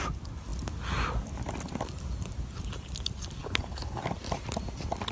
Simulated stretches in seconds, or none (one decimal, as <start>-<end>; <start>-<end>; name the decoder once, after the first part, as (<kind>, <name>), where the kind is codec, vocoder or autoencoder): 3.4-4.0 (codec, HILCodec)